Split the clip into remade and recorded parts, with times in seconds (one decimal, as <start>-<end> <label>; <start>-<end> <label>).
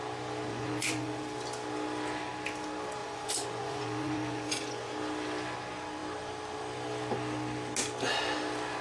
0.0-0.5 recorded; 0.5-1.2 remade; 1.2-3.0 recorded; 3.0-4.9 remade; 4.9-8.8 recorded